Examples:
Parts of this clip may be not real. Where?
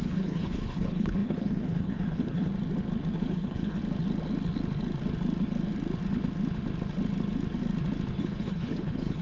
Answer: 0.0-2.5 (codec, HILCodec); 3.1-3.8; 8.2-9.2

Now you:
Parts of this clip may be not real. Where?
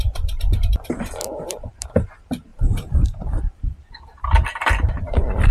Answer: 0.5-2.1 (vocoder, BigVGAN v2); 2.5-4.2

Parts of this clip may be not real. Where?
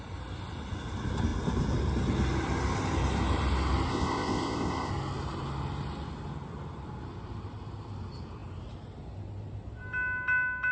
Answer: 3.9-4.9 (codec, ZipCodec)